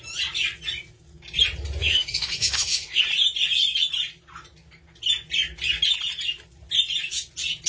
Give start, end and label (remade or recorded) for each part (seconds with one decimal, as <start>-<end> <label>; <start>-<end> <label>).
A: 0.0-1.8 recorded; 1.8-3.0 remade; 3.0-7.7 recorded